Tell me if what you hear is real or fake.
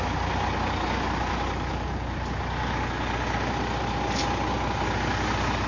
real